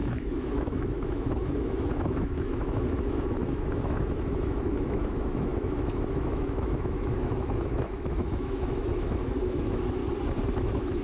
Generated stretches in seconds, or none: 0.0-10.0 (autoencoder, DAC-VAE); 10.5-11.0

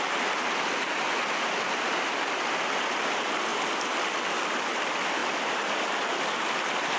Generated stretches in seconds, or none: none

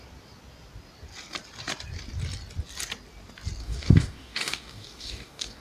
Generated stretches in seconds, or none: 3.6-5.6 (codec, DAC)